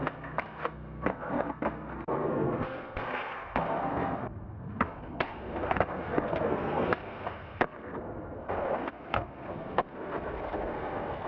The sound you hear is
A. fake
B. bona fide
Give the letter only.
A